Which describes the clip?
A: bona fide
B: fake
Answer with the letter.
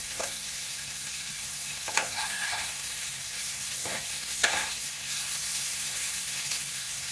B